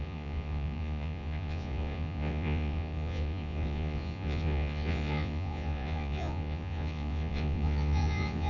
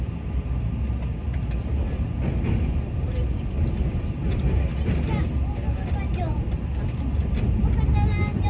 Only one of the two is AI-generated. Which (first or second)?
first